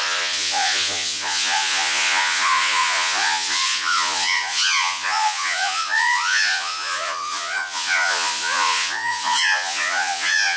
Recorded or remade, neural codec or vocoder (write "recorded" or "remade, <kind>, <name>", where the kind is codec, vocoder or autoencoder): remade, vocoder, Vocos